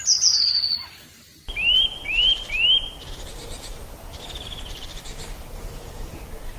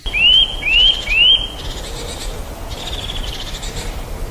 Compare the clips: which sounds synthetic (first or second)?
first